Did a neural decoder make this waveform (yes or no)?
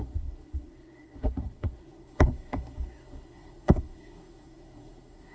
yes